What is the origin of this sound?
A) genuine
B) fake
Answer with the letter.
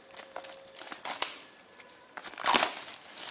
A